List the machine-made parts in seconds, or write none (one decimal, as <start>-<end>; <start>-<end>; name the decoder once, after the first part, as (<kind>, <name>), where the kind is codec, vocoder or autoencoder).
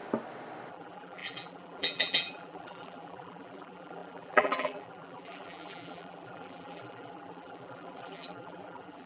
0.7-9.1 (vocoder, BigVGAN v2)